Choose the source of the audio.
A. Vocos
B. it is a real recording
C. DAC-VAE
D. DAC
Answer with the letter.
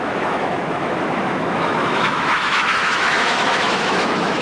C